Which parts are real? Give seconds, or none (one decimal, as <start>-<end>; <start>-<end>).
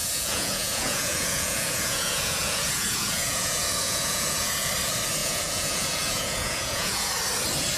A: 4.7-5.2; 7.1-7.8